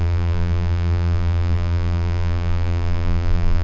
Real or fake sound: fake